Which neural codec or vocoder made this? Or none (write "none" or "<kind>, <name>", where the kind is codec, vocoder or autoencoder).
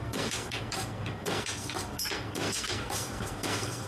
codec, SNAC